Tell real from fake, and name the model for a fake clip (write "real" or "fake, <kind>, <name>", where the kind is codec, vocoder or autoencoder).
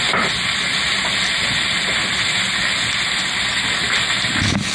real